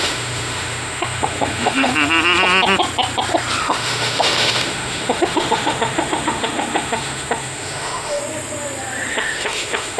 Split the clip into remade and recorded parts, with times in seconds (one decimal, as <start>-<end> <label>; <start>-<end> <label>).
0.0-1.9 remade; 1.9-3.6 recorded; 3.6-8.2 remade; 8.2-9.1 recorded; 9.1-10.0 remade